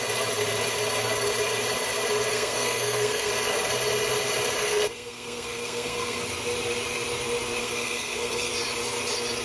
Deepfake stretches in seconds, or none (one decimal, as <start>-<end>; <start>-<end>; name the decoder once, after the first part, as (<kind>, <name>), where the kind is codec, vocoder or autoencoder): 2.3-3.3 (codec, SNAC); 4.6-6.2; 7.6-8.5